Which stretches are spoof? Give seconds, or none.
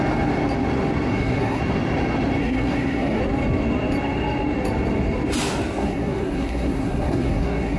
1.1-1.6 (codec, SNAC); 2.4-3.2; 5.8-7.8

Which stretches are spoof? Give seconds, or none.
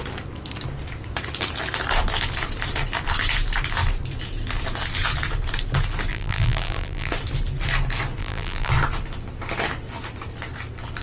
6.1-7.1 (vocoder, BigVGAN v2); 8.2-8.7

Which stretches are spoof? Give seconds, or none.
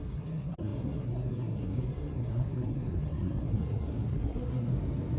0.0-4.7 (codec, SNAC)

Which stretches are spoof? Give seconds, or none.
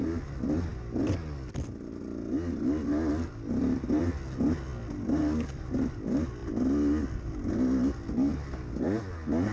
none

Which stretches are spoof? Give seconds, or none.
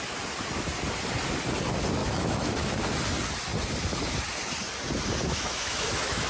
2.0-2.7 (autoencoder, DAC-VAE); 5.3-6.3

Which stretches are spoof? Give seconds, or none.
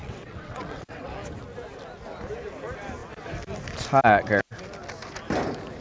0.0-1.1 (vocoder, WaveNeXt)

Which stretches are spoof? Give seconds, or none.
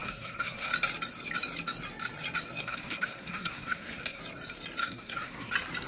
0.0-0.7 (codec, SNAC); 2.6-4.2; 4.8-5.5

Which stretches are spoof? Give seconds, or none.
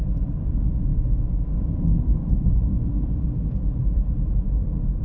0.9-2.5 (codec, DAC)